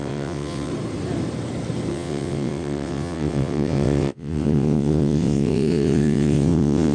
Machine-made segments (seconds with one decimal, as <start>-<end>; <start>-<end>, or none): 0.0-0.7; 1.9-6.9

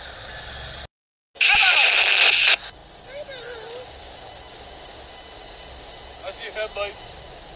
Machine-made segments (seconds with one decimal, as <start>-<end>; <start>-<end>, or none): none